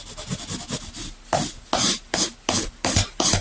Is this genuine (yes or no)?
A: yes